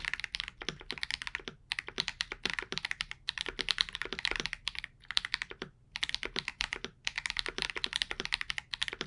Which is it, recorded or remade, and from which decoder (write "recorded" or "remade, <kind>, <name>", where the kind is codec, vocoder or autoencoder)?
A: recorded